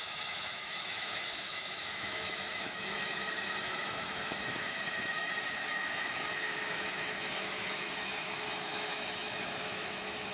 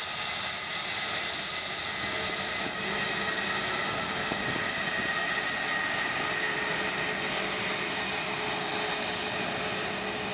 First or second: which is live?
second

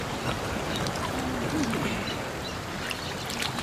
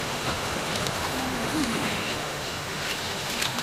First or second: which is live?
first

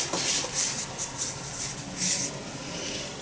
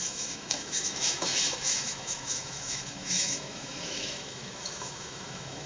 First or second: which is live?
first